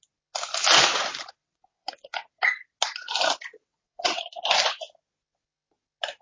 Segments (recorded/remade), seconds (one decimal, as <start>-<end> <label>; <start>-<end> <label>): 0.0-1.4 recorded; 1.4-2.4 remade; 2.4-3.6 recorded; 3.6-4.2 remade; 4.2-6.2 recorded